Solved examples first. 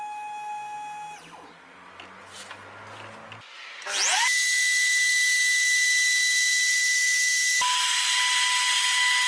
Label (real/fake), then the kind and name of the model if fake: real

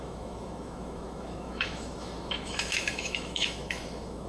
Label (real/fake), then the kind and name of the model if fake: fake, autoencoder, DAC-VAE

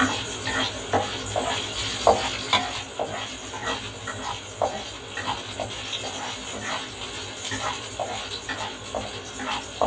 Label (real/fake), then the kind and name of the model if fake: real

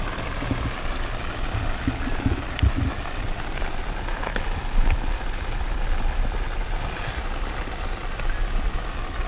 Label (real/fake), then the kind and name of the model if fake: real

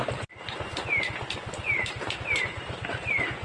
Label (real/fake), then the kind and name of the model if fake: real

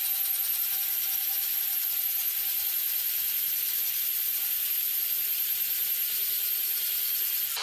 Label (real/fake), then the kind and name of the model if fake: real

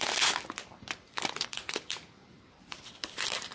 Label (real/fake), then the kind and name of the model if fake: fake, vocoder, BigVGAN v2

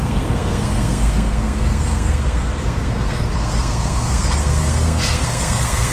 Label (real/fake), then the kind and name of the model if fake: fake, codec, SNAC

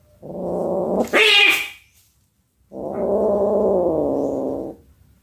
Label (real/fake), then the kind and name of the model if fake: real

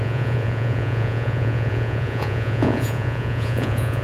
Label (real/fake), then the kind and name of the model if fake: fake, vocoder, Vocos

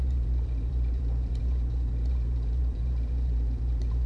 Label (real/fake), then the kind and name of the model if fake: fake, vocoder, BigVGAN v2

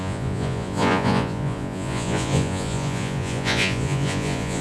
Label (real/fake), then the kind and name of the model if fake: fake, vocoder, Vocos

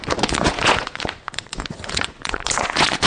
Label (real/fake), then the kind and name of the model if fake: fake, vocoder, Vocos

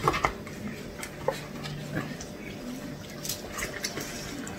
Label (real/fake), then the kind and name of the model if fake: real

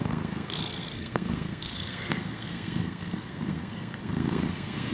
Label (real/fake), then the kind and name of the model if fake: fake, codec, SNAC